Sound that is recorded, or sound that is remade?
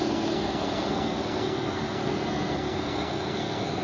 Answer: remade